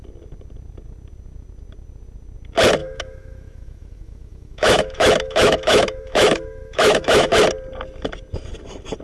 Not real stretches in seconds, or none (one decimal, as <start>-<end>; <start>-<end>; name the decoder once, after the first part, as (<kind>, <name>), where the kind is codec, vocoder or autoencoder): 2.8-7.3 (autoencoder, DAC-VAE)